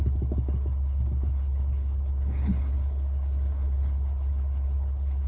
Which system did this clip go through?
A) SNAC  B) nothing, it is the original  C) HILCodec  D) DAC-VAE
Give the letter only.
C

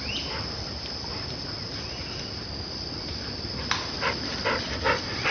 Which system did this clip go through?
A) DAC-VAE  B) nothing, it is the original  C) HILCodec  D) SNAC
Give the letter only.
B